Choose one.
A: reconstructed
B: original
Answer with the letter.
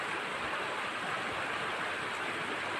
A